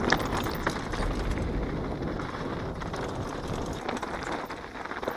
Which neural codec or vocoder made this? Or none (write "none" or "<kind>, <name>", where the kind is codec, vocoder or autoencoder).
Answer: none